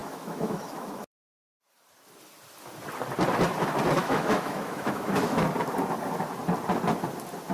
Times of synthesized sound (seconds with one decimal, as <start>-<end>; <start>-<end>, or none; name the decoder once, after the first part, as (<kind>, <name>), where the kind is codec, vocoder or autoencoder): 0.0-1.6 (autoencoder, DAC-VAE); 4.0-5.4